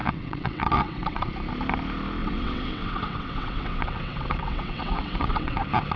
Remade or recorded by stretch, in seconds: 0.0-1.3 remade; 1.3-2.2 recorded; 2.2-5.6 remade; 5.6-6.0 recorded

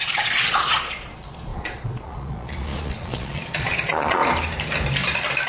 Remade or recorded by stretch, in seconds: 0.0-4.2 remade; 4.2-5.5 recorded

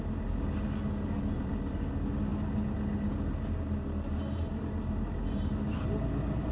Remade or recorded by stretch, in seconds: 0.0-6.5 recorded

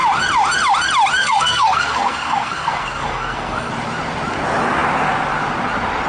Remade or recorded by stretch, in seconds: 0.0-1.2 recorded; 1.2-3.7 remade; 3.7-6.1 recorded

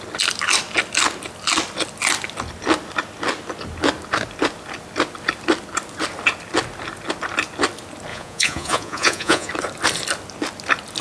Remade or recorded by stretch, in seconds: 0.0-8.1 recorded; 8.1-9.5 remade; 9.5-11.0 recorded

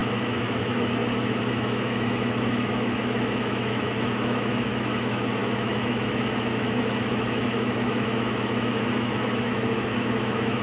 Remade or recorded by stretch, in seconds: 0.0-1.0 remade; 1.0-1.5 recorded; 1.5-10.6 remade

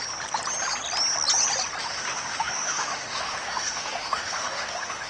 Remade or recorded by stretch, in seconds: 0.0-1.8 recorded; 1.8-5.1 remade